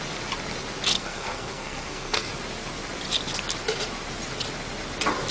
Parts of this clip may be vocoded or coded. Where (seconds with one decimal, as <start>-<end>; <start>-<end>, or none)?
0.9-2.3